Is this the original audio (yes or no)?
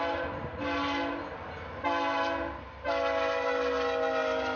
yes